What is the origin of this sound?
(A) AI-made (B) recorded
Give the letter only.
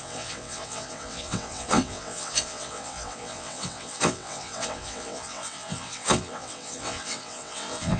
A